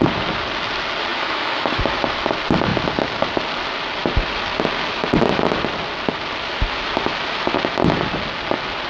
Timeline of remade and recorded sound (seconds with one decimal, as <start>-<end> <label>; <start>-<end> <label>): 0.0-1.1 recorded; 1.1-1.8 remade; 1.8-8.9 recorded